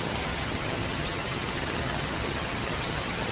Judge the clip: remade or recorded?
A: remade